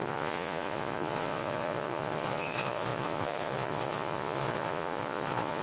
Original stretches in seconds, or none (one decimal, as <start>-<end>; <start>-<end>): none